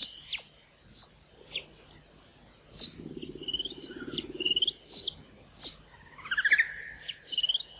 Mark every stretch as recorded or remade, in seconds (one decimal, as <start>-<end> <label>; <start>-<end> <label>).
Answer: 0.0-3.9 recorded; 3.9-4.5 remade; 4.5-7.8 recorded